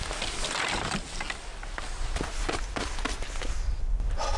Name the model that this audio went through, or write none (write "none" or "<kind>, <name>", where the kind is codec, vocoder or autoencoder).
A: none